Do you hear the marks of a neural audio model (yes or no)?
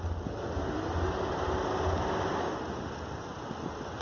no